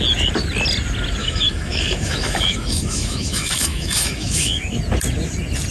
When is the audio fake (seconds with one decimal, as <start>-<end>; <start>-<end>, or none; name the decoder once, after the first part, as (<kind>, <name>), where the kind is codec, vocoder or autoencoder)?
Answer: 1.2-4.6 (autoencoder, DAC-VAE)